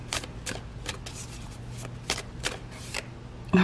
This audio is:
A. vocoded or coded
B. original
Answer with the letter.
B